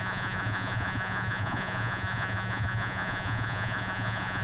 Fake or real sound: fake